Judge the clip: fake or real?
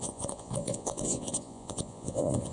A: fake